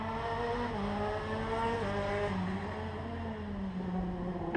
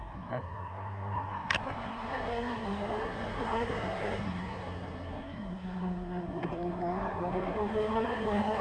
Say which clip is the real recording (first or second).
first